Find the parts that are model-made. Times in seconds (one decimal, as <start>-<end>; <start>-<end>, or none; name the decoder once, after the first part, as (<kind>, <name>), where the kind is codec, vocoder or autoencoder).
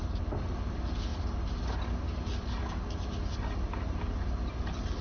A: none